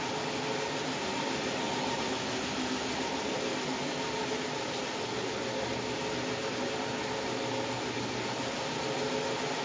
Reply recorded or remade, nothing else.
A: recorded